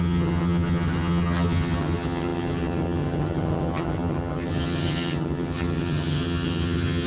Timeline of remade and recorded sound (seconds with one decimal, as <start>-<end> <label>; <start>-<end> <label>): 0.0-7.1 remade